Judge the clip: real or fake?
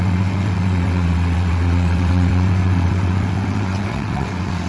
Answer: fake